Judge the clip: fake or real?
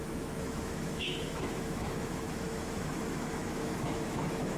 fake